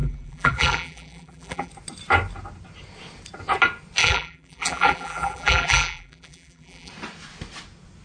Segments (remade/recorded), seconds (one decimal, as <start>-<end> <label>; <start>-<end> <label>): 0.0-1.7 remade; 1.7-4.0 recorded; 4.0-6.9 remade; 6.9-8.0 recorded